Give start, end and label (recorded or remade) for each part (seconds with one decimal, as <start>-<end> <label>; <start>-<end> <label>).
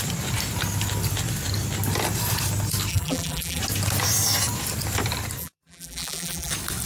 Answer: 0.0-2.9 recorded; 2.9-3.6 remade; 3.6-5.4 recorded; 5.4-6.5 remade; 6.5-6.9 recorded